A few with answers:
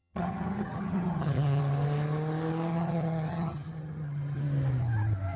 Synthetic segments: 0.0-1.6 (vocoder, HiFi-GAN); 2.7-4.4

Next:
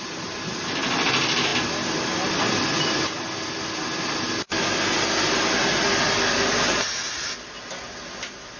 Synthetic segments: none

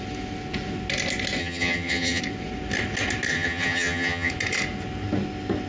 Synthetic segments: 1.4-2.2 (vocoder, HiFi-GAN); 3.3-4.3